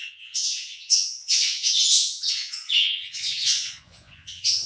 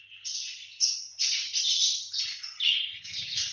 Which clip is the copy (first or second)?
first